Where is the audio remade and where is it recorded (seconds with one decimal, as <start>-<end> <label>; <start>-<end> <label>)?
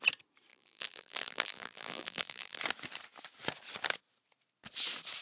0.0-0.5 recorded; 0.5-2.6 remade; 2.6-5.2 recorded